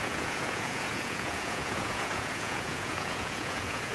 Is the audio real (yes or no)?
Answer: no